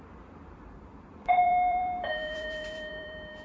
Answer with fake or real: fake